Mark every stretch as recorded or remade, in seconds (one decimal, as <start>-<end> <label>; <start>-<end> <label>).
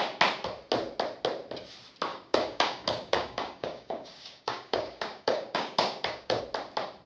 0.0-2.1 recorded; 2.1-6.4 remade; 6.4-7.1 recorded